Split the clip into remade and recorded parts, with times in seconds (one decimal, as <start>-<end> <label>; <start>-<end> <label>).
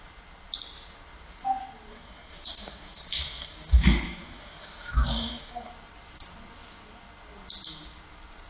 0.0-1.9 recorded; 1.9-5.7 remade; 5.7-8.5 recorded